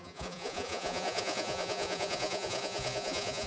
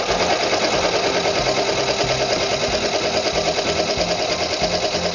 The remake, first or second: first